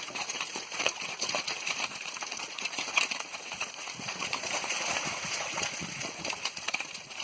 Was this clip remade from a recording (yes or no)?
yes